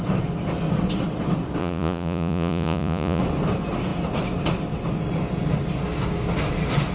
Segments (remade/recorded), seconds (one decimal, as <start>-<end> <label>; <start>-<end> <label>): 0.0-1.6 recorded; 1.6-3.2 remade; 3.2-6.9 recorded